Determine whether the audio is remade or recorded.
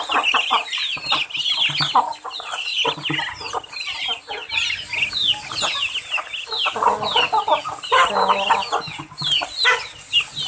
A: recorded